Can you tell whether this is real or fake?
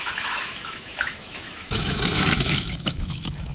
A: fake